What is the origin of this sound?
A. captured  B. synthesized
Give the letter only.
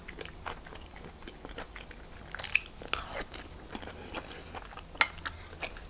A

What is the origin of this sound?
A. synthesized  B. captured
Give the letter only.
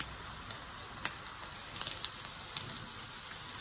B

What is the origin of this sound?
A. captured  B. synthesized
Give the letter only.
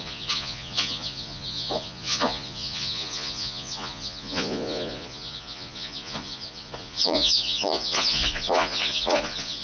B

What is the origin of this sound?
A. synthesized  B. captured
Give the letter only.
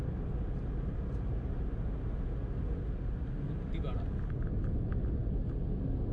B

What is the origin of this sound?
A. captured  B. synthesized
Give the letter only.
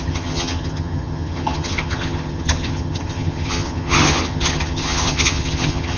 B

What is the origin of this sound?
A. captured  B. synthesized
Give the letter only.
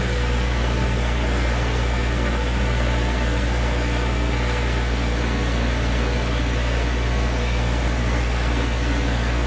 B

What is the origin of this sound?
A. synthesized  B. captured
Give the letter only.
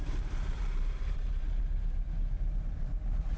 A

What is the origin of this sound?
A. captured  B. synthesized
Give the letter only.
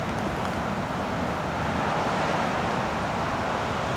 A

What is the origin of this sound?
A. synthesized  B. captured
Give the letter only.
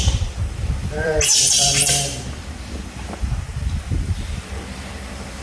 A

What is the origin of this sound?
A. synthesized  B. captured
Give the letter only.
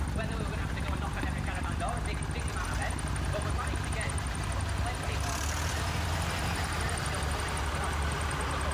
B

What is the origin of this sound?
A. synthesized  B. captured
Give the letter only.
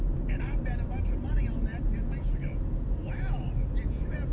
B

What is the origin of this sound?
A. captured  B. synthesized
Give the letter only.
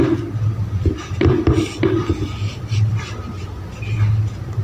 A